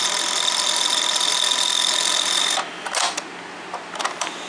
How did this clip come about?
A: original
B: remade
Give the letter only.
A